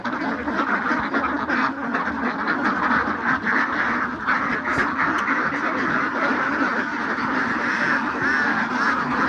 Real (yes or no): yes